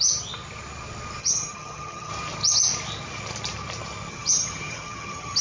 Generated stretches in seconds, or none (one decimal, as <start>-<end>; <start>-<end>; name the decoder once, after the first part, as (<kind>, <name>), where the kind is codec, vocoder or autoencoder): 1.2-2.1 (vocoder, HiFi-GAN); 4.1-5.4